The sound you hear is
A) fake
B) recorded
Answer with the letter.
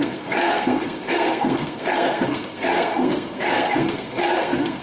A